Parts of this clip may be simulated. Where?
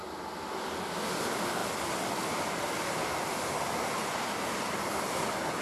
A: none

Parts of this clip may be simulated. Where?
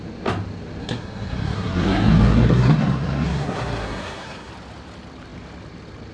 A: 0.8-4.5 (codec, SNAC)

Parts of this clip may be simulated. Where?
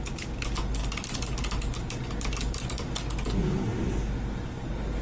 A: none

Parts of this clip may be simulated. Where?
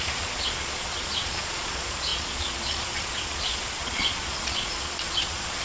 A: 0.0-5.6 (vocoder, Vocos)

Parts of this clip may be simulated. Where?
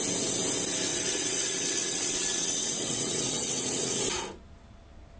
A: 0.9-4.0 (vocoder, WaveNeXt)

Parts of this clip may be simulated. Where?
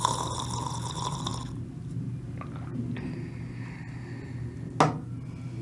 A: none